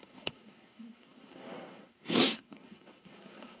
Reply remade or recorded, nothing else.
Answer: remade